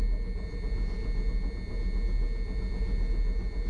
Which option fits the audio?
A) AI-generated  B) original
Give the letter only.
B